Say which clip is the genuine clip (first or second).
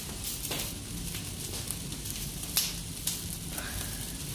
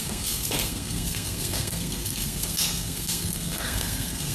first